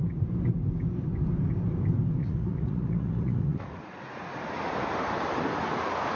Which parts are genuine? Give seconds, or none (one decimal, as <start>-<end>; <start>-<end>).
0.0-2.2; 4.5-6.2